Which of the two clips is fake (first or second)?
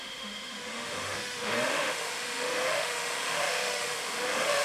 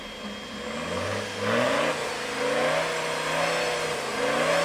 first